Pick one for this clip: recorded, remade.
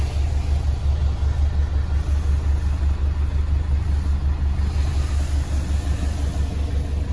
recorded